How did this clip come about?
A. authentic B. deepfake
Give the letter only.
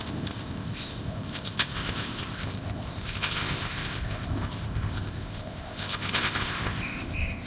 B